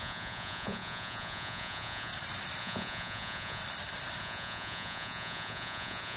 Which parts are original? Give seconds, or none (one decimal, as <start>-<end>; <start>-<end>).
2.1-2.6; 3.6-4.2